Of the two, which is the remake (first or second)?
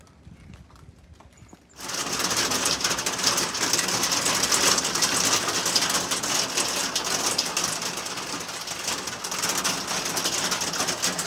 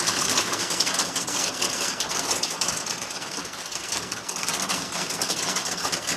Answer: second